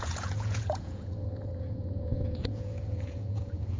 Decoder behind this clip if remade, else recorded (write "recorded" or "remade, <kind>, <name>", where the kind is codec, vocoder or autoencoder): remade, vocoder, Vocos